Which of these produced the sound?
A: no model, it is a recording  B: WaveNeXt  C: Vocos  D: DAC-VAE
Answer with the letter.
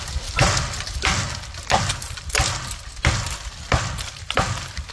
A